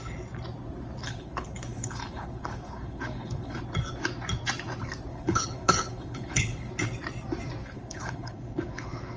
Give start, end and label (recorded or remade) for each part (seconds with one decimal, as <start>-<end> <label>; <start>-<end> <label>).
0.0-1.0 recorded; 1.0-3.6 remade; 3.6-5.1 recorded; 5.1-6.7 remade; 6.7-7.6 recorded; 7.6-9.2 remade